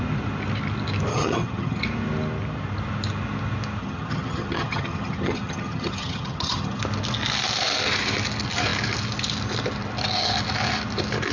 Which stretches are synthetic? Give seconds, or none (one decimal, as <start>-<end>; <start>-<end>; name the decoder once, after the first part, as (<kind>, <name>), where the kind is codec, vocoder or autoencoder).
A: 1.1-1.8 (vocoder, HiFi-GAN); 3.8-6.8